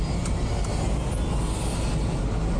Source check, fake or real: real